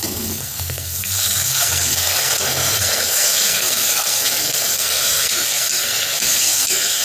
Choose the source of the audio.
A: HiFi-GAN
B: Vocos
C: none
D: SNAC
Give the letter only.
D